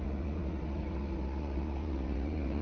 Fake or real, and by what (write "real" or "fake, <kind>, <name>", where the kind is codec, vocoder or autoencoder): fake, vocoder, Vocos